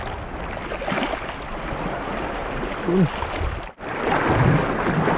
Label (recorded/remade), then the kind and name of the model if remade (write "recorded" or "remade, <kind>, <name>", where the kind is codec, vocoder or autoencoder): recorded